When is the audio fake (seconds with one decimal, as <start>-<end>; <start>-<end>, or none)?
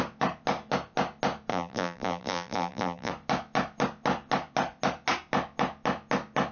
1.5-3.1